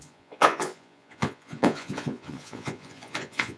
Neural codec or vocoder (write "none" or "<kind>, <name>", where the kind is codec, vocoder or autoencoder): vocoder, Vocos